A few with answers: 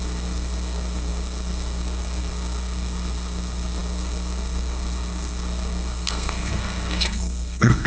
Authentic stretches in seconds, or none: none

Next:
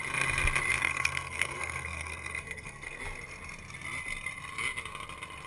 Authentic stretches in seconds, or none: 0.0-0.8; 3.0-5.5

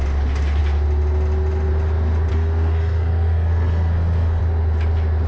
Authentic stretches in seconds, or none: 0.0-2.3; 4.4-5.3

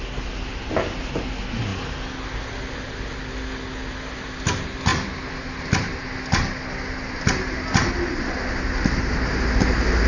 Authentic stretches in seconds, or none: 0.0-10.1

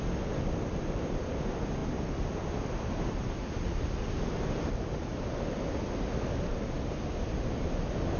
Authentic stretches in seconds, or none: 0.0-8.2